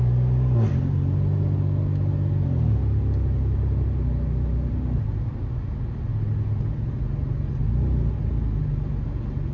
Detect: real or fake real